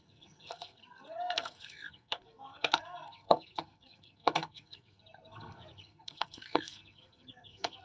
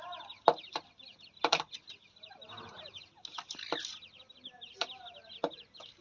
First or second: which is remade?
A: first